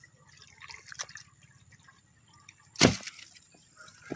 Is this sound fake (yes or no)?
no